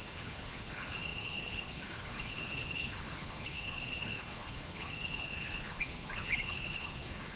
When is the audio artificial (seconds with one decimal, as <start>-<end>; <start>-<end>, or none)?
0.0-7.4